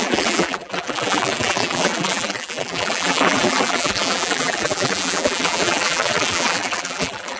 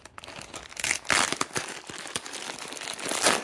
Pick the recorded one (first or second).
second